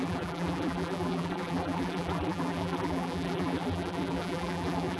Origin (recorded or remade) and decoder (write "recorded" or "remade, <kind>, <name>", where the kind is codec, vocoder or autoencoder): remade, vocoder, BigVGAN v2